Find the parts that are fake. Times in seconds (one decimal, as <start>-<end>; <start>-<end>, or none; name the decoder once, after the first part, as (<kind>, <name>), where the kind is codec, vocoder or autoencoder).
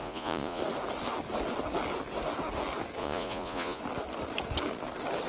0.0-0.6 (vocoder, Vocos); 3.0-3.8